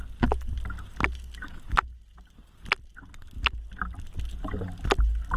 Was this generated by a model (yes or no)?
no